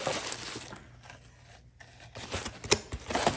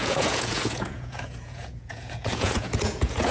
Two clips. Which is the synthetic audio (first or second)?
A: second